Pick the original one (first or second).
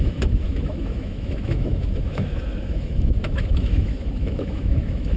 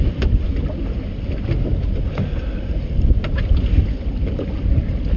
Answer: second